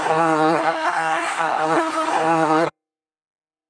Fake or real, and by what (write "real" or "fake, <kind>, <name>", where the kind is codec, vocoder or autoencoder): fake, codec, SNAC